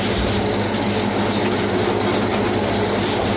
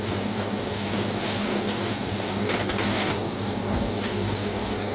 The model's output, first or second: second